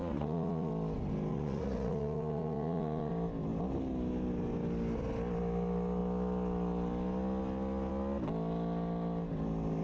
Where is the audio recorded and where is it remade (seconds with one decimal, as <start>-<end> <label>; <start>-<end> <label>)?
0.0-0.7 remade; 0.7-1.3 recorded; 1.3-3.1 remade; 3.1-9.8 recorded